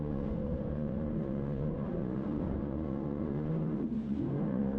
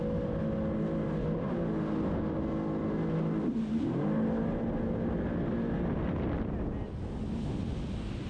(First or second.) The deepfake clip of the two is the first